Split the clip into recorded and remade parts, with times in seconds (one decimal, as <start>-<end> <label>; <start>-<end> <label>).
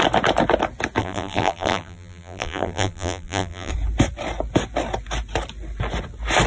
0.0-1.0 recorded; 1.0-3.7 remade; 3.7-6.5 recorded